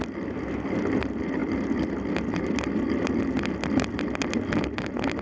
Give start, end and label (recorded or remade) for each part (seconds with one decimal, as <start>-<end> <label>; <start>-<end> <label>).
0.0-5.2 recorded